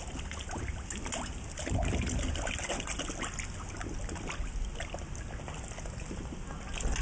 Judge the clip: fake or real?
real